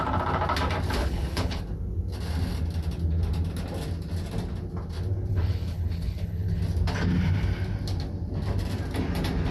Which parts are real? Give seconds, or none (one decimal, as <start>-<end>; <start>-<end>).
0.0-1.0; 1.6-5.3; 6.6-9.5